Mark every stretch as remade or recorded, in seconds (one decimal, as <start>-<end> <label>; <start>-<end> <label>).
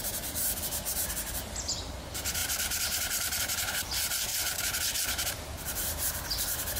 0.0-2.4 recorded; 2.4-3.4 remade; 3.4-6.8 recorded